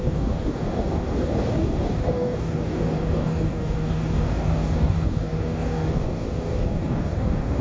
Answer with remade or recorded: remade